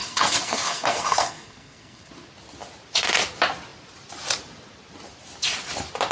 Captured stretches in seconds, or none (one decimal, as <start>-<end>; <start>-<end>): 2.1-6.1